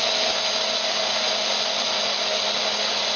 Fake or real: real